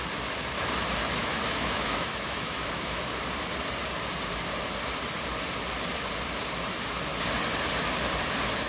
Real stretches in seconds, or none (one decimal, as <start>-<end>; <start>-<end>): 0.0-1.2; 3.0-8.7